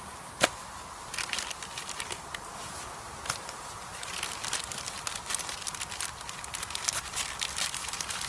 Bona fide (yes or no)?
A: yes